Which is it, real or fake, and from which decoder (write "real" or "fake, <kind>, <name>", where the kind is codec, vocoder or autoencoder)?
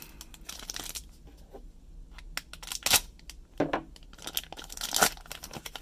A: real